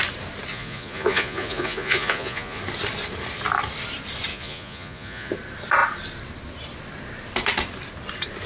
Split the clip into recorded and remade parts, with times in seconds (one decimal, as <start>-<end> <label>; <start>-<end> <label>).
0.0-0.5 recorded; 0.5-2.6 remade; 2.6-4.3 recorded; 4.3-5.3 remade; 5.3-8.5 recorded